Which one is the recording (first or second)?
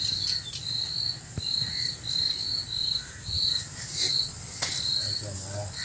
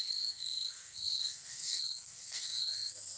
first